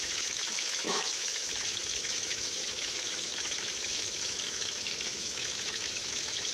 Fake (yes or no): yes